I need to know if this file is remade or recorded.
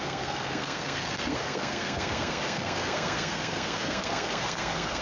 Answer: remade